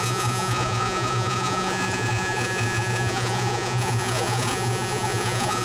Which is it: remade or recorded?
remade